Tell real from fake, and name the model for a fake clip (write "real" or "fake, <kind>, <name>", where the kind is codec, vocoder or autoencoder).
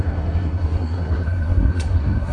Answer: fake, codec, SNAC